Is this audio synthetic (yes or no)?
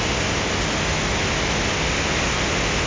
no